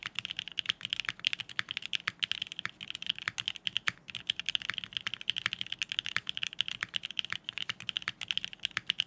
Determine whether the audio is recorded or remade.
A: recorded